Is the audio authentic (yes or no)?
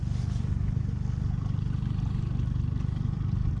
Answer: yes